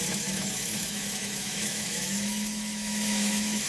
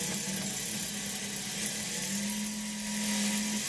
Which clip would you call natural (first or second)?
second